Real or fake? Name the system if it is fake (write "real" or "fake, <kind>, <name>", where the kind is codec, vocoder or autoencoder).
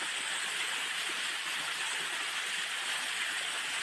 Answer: real